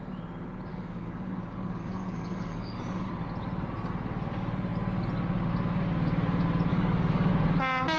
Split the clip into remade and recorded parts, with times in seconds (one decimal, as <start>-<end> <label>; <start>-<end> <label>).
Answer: 0.0-0.7 recorded; 0.7-3.1 remade; 3.1-6.7 recorded; 6.7-7.3 remade; 7.3-8.0 recorded